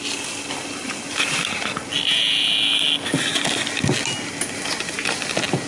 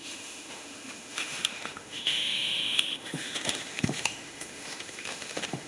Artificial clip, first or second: second